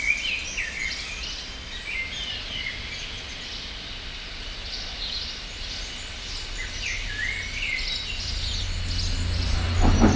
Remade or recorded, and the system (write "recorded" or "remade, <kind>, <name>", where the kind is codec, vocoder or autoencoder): recorded